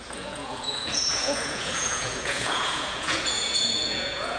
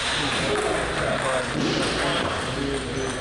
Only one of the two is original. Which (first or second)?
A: second